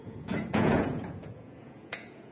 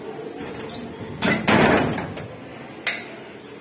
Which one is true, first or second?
second